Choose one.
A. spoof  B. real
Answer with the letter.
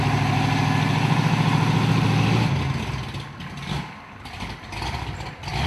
B